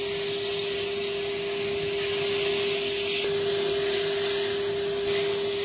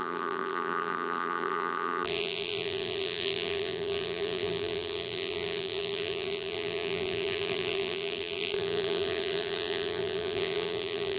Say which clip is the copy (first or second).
second